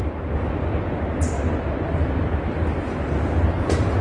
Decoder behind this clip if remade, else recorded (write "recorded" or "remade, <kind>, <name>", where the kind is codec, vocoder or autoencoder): recorded